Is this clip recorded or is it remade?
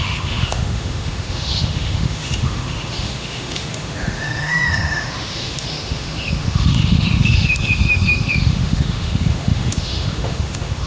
remade